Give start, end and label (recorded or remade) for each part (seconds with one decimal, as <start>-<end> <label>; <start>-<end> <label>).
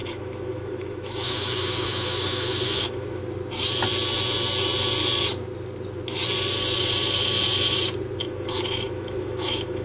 0.0-3.2 remade; 3.2-8.2 recorded; 8.2-9.8 remade